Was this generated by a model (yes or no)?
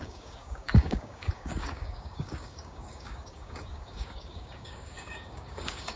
yes